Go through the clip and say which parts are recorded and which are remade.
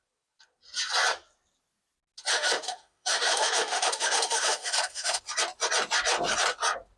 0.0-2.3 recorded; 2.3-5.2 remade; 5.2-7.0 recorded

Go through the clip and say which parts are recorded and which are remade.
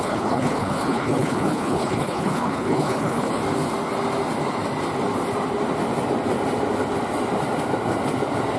0.0-3.4 remade; 3.4-8.6 recorded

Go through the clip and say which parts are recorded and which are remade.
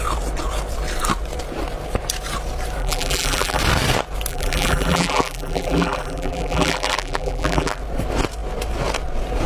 0.0-2.8 recorded; 2.8-3.6 remade; 3.6-4.3 recorded; 4.3-7.8 remade; 7.8-9.5 recorded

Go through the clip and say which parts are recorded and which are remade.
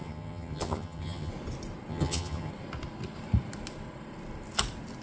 0.0-1.3 remade; 1.3-1.9 recorded; 1.9-2.5 remade; 2.5-5.0 recorded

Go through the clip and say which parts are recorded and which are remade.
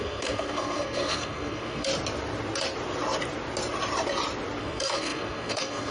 0.0-1.9 remade; 1.9-4.6 recorded; 4.6-5.9 remade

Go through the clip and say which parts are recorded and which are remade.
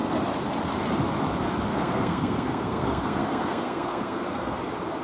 0.0-1.7 recorded; 1.7-4.6 remade; 4.6-5.0 recorded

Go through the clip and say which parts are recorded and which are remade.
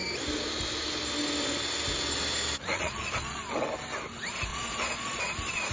0.0-2.7 recorded; 2.7-3.4 remade; 3.4-4.5 recorded; 4.5-5.2 remade; 5.2-5.7 recorded